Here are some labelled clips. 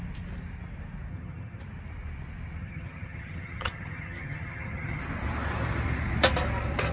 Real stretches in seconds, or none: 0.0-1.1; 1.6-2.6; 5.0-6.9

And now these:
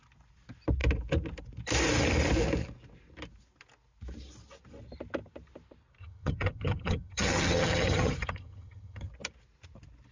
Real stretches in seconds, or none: 0.0-6.0; 9.1-10.1